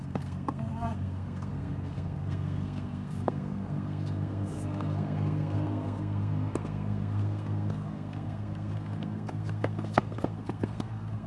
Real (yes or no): no